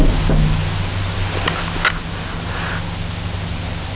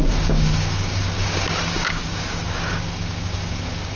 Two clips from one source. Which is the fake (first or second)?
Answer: second